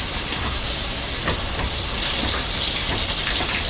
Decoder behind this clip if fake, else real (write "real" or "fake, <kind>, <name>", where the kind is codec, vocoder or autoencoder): real